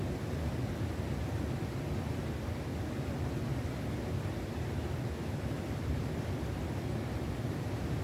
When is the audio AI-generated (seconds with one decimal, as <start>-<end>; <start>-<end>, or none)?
none

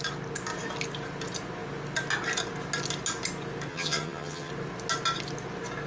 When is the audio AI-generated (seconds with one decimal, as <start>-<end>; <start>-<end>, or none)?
3.7-4.5